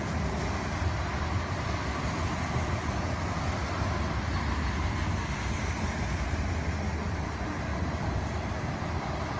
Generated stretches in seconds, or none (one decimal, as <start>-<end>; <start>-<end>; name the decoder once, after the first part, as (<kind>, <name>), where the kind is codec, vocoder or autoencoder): none